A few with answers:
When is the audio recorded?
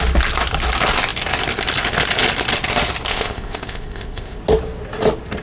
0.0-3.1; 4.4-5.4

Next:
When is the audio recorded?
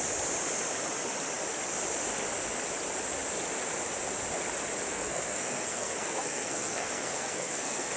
0.0-4.9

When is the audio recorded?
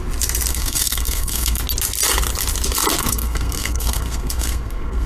0.0-0.5; 1.6-3.0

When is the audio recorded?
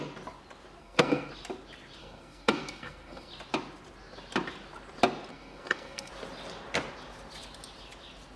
0.0-0.8; 1.3-2.0; 3.3-5.3; 6.1-8.4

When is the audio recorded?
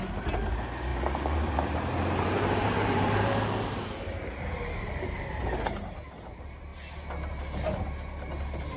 0.0-0.9; 6.1-8.8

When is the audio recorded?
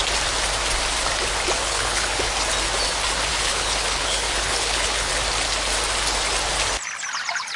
0.0-1.6; 2.3-3.3; 5.1-7.6